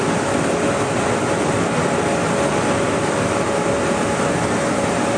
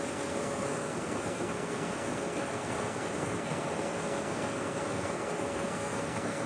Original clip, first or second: first